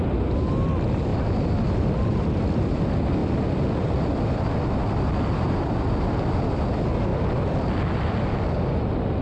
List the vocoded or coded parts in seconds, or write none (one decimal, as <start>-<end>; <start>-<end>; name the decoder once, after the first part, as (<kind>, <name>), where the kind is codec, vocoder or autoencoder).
1.1-2.8 (vocoder, BigVGAN v2); 7.1-7.8